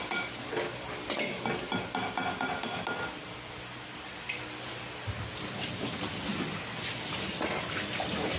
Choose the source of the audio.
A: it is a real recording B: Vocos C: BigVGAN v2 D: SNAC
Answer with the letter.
A